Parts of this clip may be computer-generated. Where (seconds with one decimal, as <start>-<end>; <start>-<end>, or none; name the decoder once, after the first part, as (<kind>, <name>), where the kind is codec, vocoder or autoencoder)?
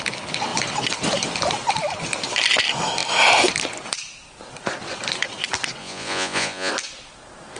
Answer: 5.8-6.7 (vocoder, Vocos)